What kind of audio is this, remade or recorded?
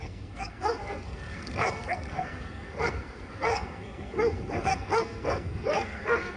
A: remade